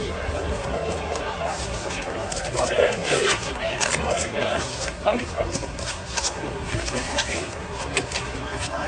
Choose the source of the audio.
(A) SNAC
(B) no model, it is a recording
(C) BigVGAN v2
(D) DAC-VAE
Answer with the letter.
A